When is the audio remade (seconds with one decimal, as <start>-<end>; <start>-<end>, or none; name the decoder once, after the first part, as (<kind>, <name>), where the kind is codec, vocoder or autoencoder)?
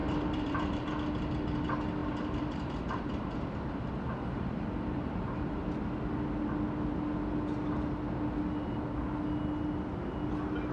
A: 0.0-0.9 (vocoder, BigVGAN v2); 2.0-5.5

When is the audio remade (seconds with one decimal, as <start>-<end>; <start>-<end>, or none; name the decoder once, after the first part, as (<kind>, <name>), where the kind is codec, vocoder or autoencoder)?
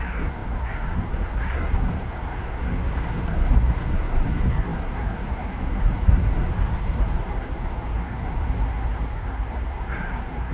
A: 0.0-10.5 (codec, SNAC)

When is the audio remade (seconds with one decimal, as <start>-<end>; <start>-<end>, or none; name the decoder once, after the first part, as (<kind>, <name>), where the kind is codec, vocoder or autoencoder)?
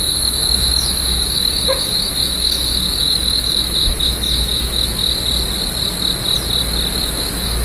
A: 0.0-5.0 (autoencoder, DAC-VAE); 7.0-7.6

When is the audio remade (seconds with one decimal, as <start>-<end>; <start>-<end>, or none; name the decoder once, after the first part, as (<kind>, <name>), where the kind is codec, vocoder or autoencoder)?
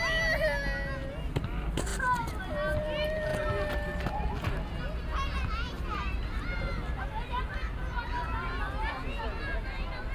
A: 1.9-2.4 (vocoder, BigVGAN v2)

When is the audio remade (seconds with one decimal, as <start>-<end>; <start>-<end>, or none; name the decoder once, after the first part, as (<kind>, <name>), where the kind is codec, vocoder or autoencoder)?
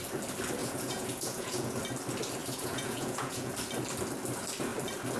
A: 0.6-1.8 (vocoder, Vocos); 2.4-3.5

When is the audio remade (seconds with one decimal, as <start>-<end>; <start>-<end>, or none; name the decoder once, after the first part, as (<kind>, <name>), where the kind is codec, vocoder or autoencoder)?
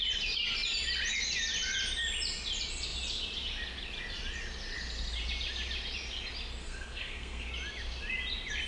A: 6.6-7.5 (codec, SNAC)